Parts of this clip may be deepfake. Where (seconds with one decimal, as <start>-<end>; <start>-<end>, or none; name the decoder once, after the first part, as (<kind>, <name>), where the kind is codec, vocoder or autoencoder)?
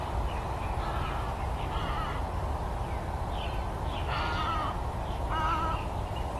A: 4.6-5.4 (vocoder, BigVGAN v2)